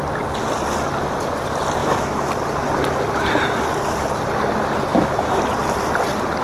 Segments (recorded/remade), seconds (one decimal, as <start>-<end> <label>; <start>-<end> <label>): 0.0-1.8 recorded; 1.8-2.3 remade; 2.3-4.9 recorded; 4.9-5.4 remade; 5.4-6.4 recorded